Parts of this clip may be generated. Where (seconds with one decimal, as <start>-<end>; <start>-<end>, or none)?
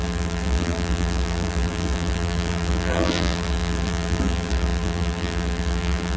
0.0-6.2